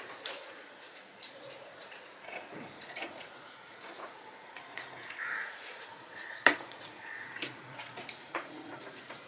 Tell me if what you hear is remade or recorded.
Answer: remade